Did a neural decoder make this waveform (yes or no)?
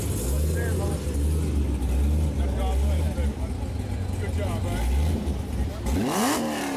no